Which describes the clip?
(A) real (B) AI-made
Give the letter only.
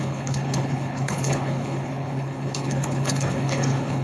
B